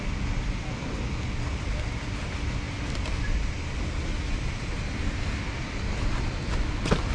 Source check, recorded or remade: recorded